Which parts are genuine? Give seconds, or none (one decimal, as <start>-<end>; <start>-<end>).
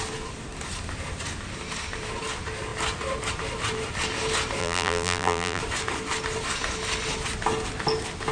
0.0-4.6; 5.6-8.3